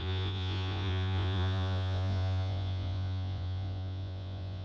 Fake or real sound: fake